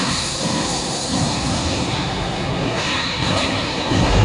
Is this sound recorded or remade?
remade